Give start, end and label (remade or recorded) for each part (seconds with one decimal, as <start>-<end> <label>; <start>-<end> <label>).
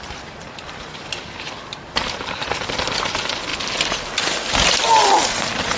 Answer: 0.0-3.5 remade; 3.5-4.2 recorded; 4.2-5.8 remade